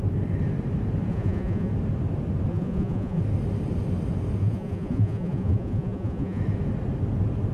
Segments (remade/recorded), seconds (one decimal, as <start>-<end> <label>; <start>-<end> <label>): 0.0-1.1 recorded; 1.1-1.7 remade; 1.7-2.5 recorded; 2.5-3.2 remade; 3.2-4.4 recorded; 4.4-6.4 remade; 6.4-7.5 recorded